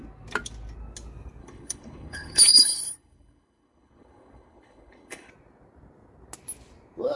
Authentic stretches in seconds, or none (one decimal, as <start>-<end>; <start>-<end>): 0.0-1.4; 5.3-7.2